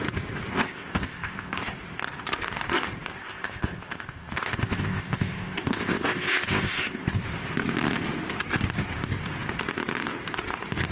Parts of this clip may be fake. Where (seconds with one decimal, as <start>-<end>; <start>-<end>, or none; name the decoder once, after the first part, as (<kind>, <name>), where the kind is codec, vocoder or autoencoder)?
0.5-1.7 (codec, ZipCodec); 3.2-7.2